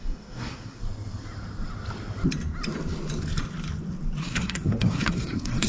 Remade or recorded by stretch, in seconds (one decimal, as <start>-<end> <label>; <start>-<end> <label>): 0.0-0.8 remade; 0.8-4.2 recorded; 4.2-5.7 remade